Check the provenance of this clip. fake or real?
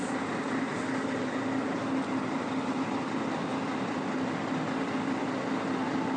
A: real